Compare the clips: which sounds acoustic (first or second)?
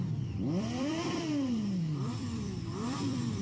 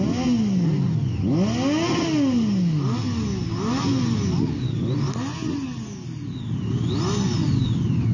second